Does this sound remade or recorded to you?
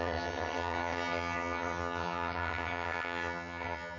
remade